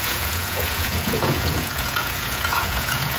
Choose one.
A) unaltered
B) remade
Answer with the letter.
B